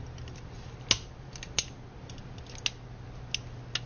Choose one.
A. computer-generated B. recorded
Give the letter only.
B